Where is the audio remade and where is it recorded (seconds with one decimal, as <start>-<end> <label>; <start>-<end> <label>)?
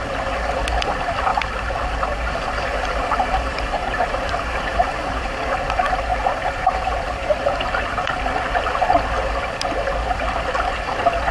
0.0-2.7 recorded; 2.7-5.2 remade; 5.2-11.3 recorded